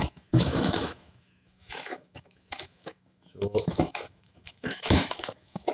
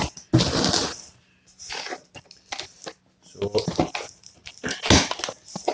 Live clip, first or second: second